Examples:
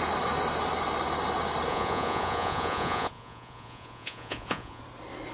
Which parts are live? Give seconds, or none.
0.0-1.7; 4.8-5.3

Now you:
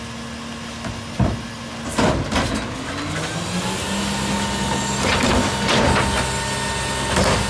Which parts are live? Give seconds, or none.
0.0-7.5